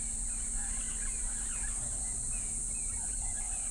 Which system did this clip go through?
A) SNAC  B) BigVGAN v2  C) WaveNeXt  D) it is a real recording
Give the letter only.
D